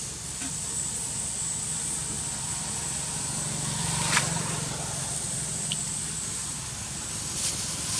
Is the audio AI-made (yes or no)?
no